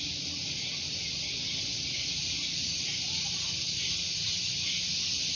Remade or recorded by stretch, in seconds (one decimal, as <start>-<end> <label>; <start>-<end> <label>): 0.0-5.4 recorded